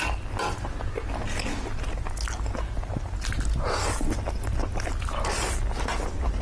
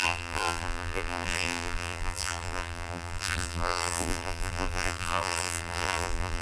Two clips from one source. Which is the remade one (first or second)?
second